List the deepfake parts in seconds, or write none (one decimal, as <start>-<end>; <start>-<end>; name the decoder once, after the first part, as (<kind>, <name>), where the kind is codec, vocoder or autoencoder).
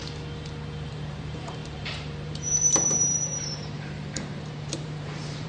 0.9-5.5 (vocoder, BigVGAN v2)